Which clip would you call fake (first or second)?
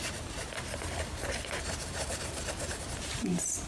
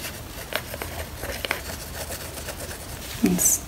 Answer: first